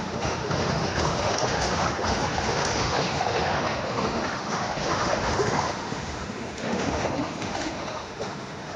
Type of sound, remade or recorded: remade